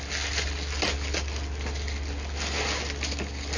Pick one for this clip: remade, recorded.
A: recorded